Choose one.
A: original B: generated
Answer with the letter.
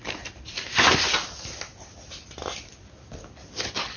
A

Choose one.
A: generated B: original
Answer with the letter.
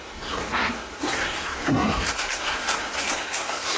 A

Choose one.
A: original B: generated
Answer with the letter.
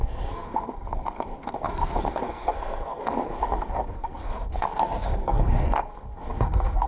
B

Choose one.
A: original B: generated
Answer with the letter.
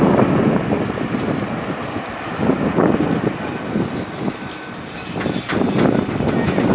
A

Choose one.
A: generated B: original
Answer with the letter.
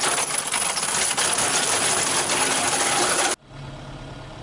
B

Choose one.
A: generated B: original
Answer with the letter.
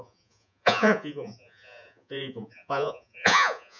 A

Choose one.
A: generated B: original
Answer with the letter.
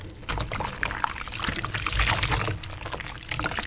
B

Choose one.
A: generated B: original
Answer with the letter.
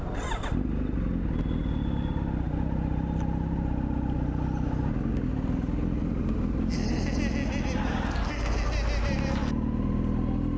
B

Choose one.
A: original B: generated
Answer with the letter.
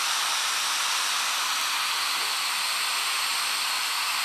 A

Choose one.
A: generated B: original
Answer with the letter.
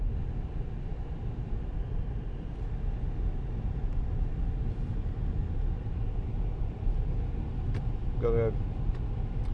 B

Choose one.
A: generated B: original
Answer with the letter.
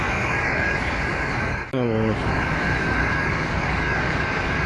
A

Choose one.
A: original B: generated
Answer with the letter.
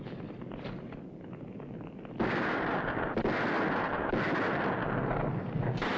A